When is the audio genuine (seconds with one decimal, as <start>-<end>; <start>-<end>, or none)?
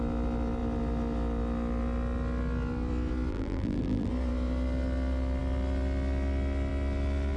0.0-3.3; 4.1-7.4